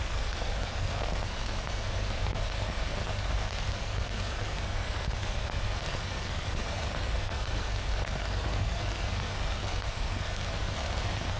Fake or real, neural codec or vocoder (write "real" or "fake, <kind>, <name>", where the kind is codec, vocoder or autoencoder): fake, codec, SNAC